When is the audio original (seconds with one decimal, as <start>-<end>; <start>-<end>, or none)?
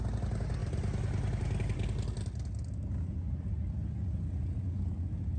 0.0-5.4